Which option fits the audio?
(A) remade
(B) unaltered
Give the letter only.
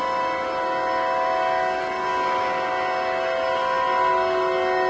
B